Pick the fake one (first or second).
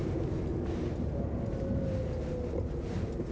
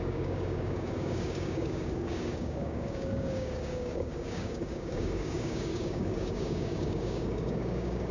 second